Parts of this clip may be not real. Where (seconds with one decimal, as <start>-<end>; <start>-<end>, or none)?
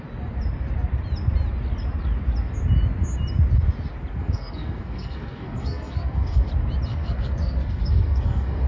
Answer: 4.2-6.5; 6.9-8.7